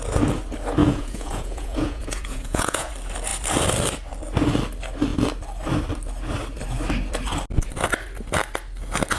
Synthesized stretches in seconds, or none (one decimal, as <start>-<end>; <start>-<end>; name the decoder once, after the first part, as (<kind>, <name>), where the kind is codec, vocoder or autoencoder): 0.8-2.9 (vocoder, Vocos)